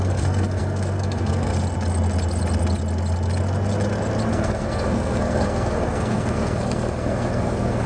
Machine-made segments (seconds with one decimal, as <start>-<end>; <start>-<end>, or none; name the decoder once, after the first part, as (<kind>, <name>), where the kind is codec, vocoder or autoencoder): 0.0-1.5 (codec, SNAC); 4.3-7.9